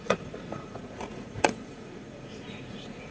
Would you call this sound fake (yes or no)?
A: yes